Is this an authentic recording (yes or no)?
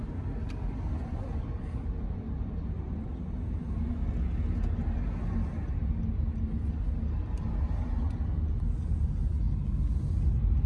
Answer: yes